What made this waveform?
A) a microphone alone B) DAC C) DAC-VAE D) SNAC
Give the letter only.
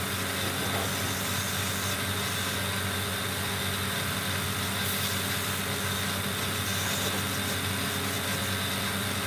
A